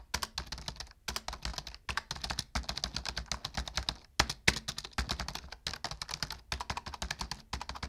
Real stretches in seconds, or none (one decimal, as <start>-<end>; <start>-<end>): 0.0-7.9